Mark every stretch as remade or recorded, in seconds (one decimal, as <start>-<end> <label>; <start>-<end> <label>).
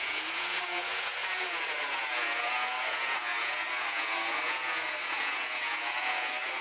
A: 0.0-6.6 remade